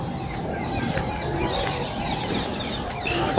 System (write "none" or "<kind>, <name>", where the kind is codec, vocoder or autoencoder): none